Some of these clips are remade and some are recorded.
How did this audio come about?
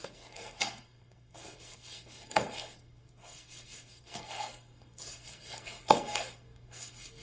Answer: remade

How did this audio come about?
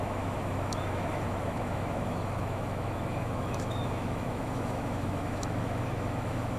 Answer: remade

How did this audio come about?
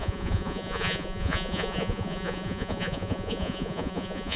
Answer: remade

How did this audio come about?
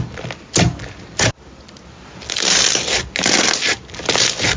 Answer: recorded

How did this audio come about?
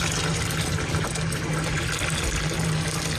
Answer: recorded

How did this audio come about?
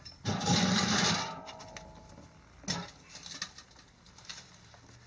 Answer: recorded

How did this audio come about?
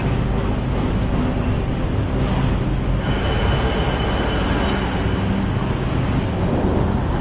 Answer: recorded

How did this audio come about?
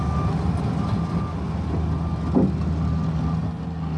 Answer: recorded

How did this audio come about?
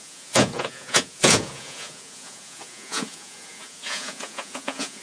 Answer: remade